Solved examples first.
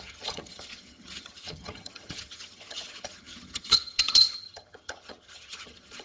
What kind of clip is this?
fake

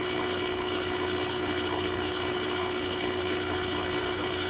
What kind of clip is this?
fake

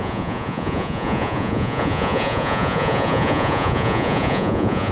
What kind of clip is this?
fake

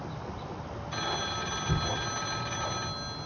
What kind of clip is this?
real